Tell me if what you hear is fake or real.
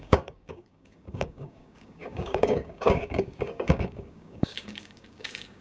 fake